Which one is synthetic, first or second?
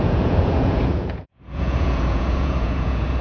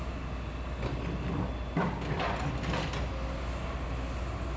first